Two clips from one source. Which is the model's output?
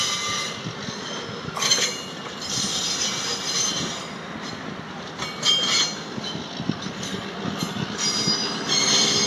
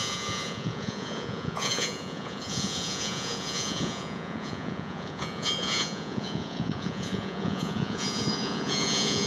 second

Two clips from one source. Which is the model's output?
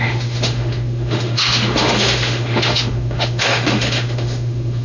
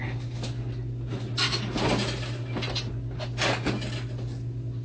first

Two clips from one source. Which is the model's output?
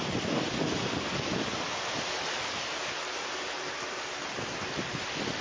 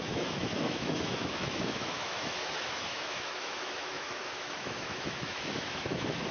second